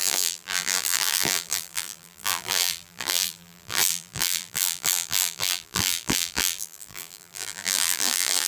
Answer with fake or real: fake